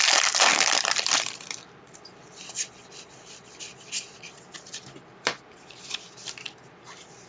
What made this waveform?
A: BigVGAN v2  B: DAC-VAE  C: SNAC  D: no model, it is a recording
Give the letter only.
A